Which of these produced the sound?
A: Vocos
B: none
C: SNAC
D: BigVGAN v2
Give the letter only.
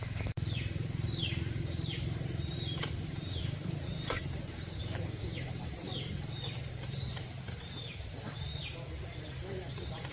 D